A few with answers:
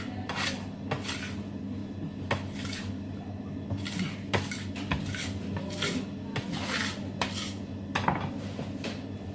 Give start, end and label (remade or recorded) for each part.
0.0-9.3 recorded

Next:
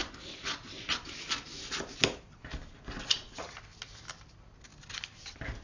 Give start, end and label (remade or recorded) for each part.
0.0-5.6 recorded

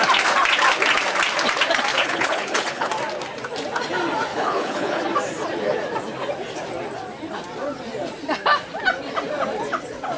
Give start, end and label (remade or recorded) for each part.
0.0-1.9 recorded; 1.9-2.9 remade; 2.9-4.3 recorded; 4.3-5.0 remade; 5.0-10.2 recorded

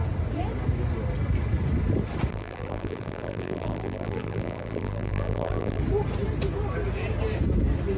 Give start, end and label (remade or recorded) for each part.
0.0-2.3 recorded; 2.3-5.8 remade; 5.8-8.0 recorded